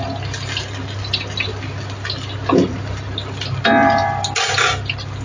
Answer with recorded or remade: recorded